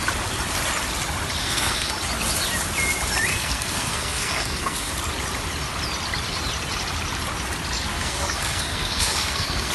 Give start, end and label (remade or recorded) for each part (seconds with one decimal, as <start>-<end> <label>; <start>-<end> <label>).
0.0-1.4 recorded; 1.4-1.9 remade; 1.9-3.3 recorded; 3.3-4.9 remade; 4.9-7.9 recorded; 7.9-9.7 remade